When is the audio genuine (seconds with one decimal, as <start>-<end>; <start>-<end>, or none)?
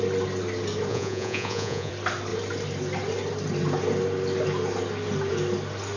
0.0-0.9; 1.9-6.0